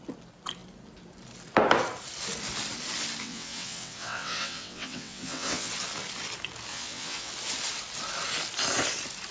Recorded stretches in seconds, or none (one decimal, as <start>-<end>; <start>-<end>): 0.0-3.2; 5.7-6.7; 7.3-9.3